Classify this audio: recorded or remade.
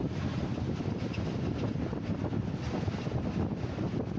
recorded